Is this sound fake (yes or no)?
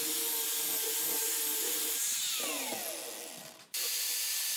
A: no